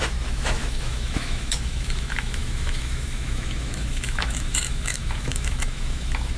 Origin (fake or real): fake